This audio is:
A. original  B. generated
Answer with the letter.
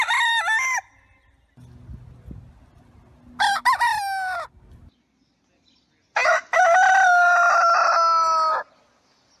A